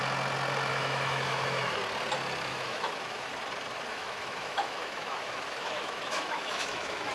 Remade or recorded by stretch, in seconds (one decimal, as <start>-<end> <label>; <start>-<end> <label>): 0.0-0.7 recorded; 0.7-1.8 remade; 1.8-2.5 recorded; 2.5-3.3 remade; 3.3-3.9 recorded; 3.9-7.1 remade